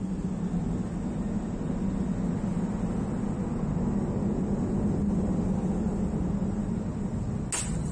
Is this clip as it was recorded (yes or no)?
yes